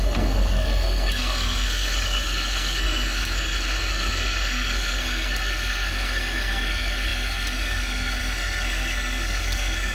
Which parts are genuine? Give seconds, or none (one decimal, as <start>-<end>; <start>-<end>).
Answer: none